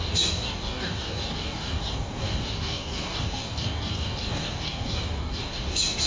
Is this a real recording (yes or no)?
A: no